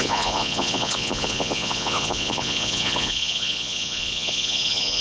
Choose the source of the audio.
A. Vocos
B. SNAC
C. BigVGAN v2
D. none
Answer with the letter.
A